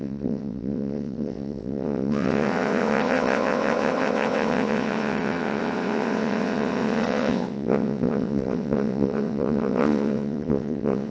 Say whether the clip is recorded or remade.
remade